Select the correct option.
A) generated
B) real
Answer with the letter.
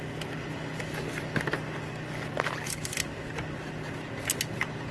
B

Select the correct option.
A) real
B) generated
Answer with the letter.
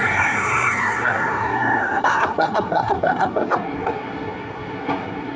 B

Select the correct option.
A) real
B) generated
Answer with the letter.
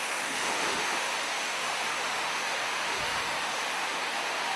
B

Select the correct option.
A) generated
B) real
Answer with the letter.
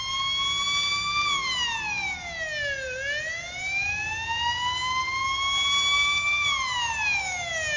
B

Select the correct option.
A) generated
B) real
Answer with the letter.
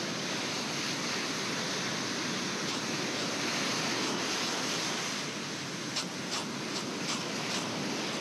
B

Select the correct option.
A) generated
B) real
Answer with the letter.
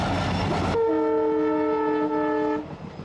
B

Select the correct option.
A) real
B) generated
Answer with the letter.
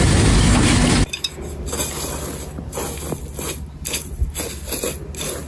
A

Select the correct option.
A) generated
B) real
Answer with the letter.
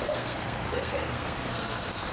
A